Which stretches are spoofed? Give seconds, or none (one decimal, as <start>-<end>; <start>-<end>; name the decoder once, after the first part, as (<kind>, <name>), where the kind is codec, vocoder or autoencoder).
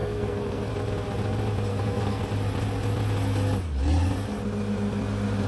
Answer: 0.0-0.7 (codec, SNAC); 1.7-2.2